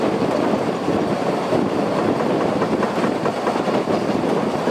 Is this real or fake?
real